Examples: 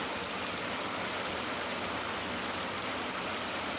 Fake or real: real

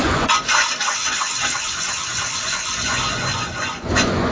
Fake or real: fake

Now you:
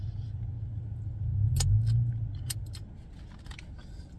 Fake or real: real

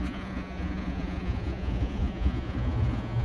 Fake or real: fake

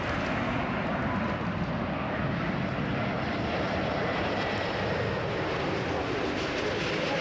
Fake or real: real